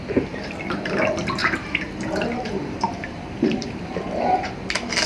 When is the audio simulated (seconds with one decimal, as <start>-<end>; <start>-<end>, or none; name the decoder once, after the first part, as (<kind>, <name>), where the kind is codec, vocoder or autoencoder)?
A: 1.4-4.5 (vocoder, BigVGAN v2)